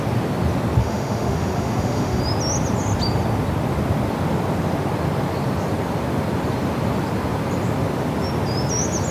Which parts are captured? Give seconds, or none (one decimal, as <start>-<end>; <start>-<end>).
0.0-0.8; 2.2-9.1